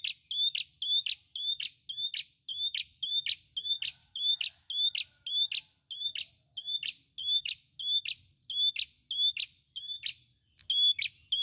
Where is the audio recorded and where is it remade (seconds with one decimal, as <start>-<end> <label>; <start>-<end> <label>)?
0.0-2.5 recorded; 2.5-3.1 remade; 3.1-4.0 recorded; 4.0-4.7 remade; 4.7-7.2 recorded; 7.2-7.8 remade; 7.8-11.4 recorded